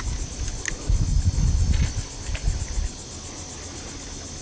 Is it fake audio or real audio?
real